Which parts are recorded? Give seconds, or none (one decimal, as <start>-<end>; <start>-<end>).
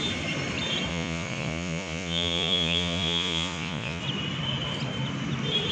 0.0-0.9; 4.0-5.7